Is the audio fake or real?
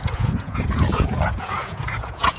fake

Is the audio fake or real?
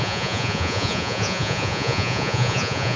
fake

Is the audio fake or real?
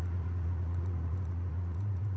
fake